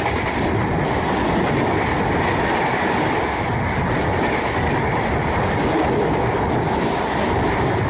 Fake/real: real